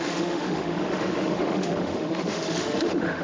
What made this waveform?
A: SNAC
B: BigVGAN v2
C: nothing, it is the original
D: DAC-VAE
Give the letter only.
D